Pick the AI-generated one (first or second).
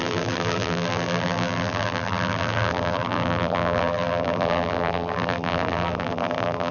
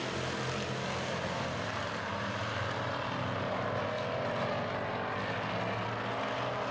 first